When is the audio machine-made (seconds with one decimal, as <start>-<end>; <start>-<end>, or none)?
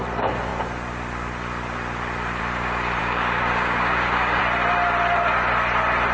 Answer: 3.0-4.4